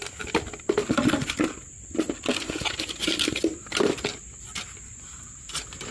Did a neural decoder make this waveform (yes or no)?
no